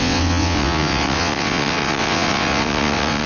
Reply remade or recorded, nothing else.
remade